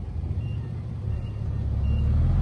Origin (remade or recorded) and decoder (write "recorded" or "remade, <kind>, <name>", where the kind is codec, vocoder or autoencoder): recorded